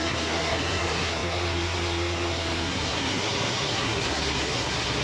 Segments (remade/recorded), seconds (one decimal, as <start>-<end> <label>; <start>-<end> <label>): 0.0-5.0 remade